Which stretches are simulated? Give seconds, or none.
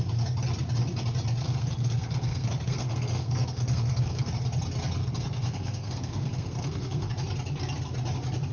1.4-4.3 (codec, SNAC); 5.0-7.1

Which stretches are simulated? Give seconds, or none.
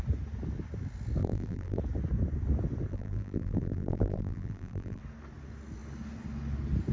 1.2-1.8 (vocoder, BigVGAN v2); 2.9-5.0